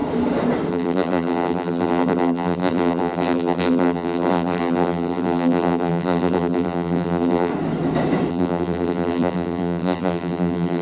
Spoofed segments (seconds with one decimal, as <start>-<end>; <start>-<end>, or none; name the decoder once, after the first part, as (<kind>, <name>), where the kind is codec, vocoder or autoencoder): 0.7-7.5 (vocoder, BigVGAN v2); 8.3-10.8